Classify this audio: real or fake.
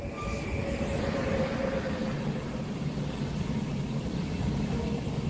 real